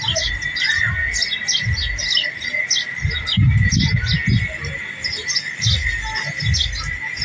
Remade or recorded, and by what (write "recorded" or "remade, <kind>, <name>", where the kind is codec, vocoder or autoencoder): recorded